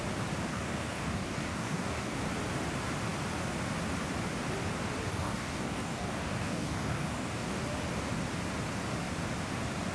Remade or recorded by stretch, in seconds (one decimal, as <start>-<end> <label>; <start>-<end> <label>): 0.0-0.5 recorded; 0.5-2.2 remade; 2.2-5.1 recorded; 5.1-7.6 remade; 7.6-9.9 recorded